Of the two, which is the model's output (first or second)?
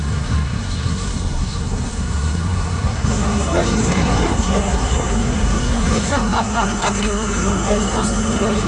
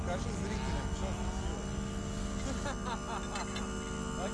first